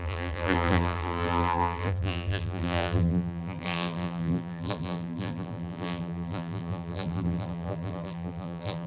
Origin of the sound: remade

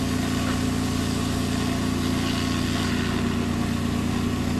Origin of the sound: recorded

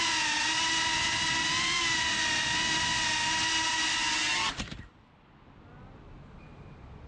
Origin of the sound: recorded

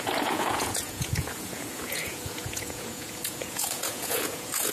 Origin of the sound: remade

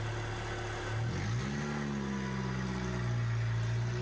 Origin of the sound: recorded